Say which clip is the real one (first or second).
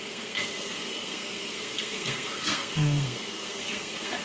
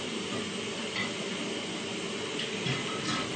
second